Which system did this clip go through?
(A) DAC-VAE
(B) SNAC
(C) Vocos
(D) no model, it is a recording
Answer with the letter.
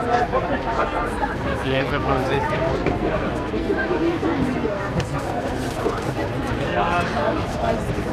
B